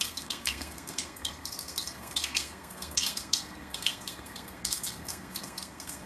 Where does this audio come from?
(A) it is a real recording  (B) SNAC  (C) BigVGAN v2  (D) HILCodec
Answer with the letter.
B